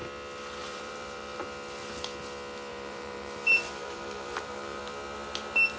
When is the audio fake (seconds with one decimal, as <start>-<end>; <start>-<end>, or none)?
0.6-1.4; 2.7-4.8